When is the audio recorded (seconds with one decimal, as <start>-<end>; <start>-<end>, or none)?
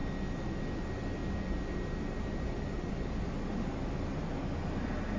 0.0-5.2